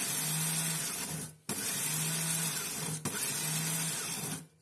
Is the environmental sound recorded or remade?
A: recorded